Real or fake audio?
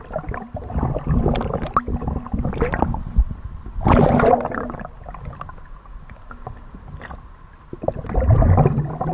real